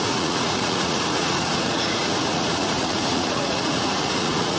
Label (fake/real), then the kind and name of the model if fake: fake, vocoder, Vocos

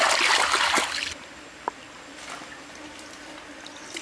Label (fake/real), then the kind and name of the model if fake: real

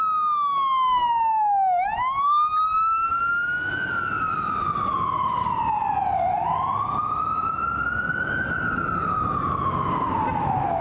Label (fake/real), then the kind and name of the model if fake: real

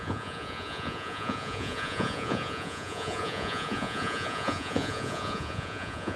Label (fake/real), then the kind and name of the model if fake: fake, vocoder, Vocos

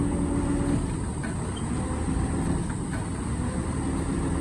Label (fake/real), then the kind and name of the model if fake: real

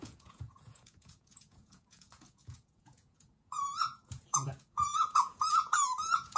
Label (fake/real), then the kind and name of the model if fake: fake, vocoder, Vocos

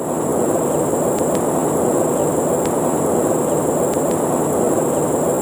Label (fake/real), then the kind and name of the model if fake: real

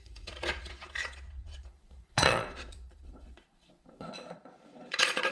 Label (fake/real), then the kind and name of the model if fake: fake, vocoder, Vocos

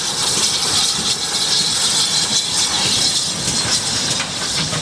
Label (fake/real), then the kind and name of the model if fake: real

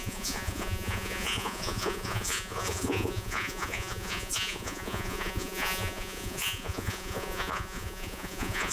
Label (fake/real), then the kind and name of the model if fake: fake, vocoder, Vocos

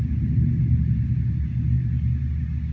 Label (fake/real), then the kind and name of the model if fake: real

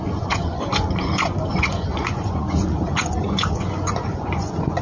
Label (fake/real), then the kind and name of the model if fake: fake, vocoder, Vocos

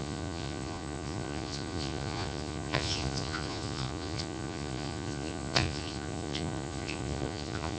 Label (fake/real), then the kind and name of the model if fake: fake, vocoder, Vocos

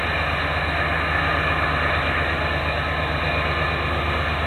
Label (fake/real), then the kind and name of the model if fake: real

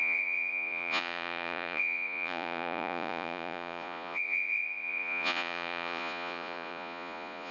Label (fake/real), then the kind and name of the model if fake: fake, vocoder, Vocos